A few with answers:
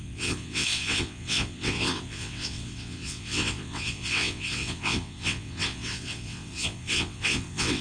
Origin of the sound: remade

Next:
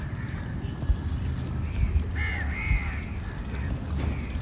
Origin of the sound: remade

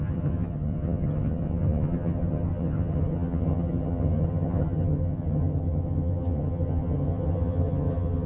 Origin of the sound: remade